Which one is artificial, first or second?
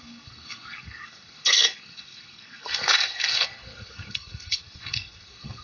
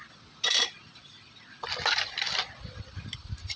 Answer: first